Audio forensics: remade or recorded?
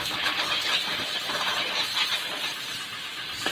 recorded